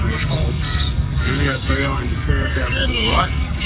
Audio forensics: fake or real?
fake